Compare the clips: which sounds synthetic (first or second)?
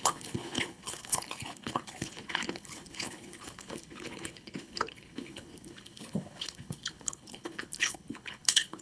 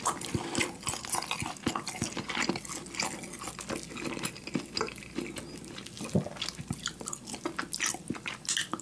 first